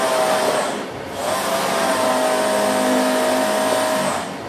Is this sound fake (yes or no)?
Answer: no